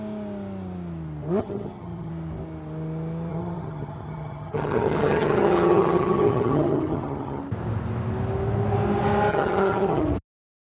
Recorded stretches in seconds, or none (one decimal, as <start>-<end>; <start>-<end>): 0.0-1.4; 2.1-3.3; 7.4-9.3; 10.0-10.6